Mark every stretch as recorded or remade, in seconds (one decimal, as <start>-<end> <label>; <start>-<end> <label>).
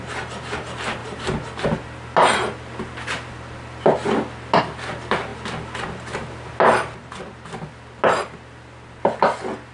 0.0-9.7 recorded